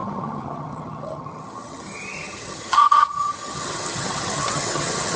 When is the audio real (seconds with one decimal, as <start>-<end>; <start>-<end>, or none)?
none